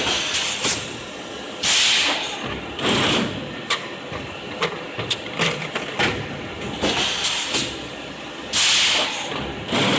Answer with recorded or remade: recorded